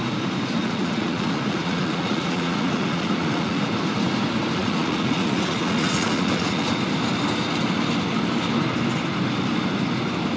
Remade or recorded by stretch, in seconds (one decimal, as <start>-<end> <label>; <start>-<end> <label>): 0.0-0.6 recorded; 0.6-3.6 remade; 3.6-4.6 recorded; 4.6-6.7 remade; 6.7-10.4 recorded